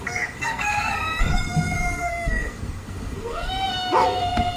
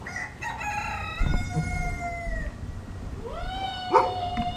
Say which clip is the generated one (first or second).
first